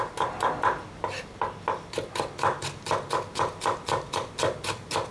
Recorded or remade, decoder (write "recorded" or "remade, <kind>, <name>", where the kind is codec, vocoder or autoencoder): recorded